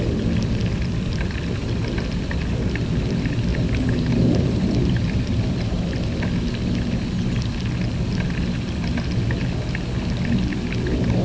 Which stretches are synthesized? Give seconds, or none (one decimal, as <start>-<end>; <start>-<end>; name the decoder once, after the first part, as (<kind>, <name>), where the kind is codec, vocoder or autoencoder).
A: 3.5-5.3 (vocoder, BigVGAN v2)